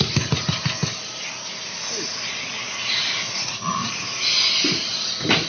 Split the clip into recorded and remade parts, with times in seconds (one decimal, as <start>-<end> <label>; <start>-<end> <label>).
0.0-3.0 recorded; 3.0-4.2 remade; 4.2-5.5 recorded